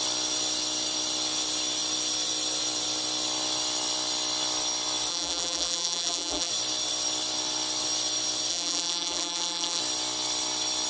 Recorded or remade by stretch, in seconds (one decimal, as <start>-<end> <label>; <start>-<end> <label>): 0.0-5.1 recorded; 5.1-6.5 remade; 6.5-8.5 recorded; 8.5-9.8 remade; 9.8-10.9 recorded